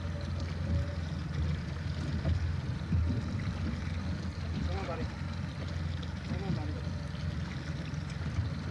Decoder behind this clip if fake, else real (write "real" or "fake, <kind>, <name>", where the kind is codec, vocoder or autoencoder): real